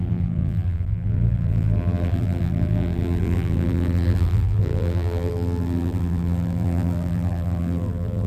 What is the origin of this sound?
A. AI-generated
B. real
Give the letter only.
A